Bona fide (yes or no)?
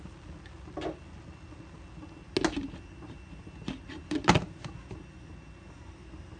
yes